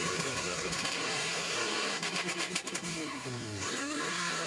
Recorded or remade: remade